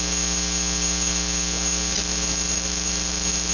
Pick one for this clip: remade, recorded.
recorded